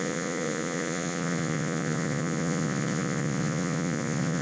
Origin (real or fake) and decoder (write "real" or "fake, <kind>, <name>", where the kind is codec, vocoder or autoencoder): fake, vocoder, Vocos